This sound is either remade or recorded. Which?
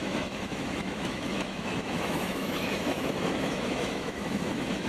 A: remade